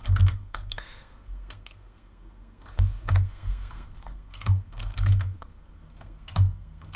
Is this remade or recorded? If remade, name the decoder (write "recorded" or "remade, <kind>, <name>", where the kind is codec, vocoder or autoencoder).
remade, codec, SNAC